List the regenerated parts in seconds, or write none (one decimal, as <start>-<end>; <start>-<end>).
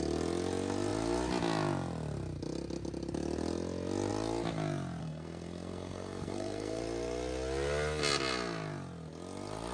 5.0-6.8